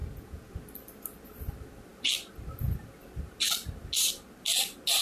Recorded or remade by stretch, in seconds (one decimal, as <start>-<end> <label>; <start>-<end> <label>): 0.0-0.5 remade; 0.5-5.0 recorded